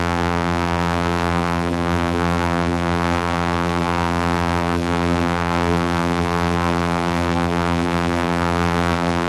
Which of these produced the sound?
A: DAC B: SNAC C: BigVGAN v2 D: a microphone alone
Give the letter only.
C